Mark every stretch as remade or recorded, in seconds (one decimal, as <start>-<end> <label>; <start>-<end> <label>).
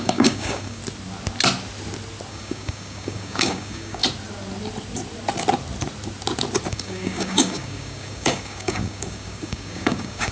0.0-0.8 remade; 0.8-2.3 recorded; 2.3-4.0 remade; 4.0-6.7 recorded; 6.7-10.3 remade